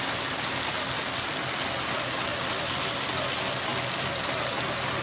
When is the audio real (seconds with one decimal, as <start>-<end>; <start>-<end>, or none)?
0.0-2.3; 3.1-3.7; 4.5-5.0